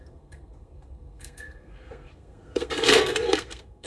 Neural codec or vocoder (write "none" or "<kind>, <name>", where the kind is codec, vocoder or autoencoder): codec, SNAC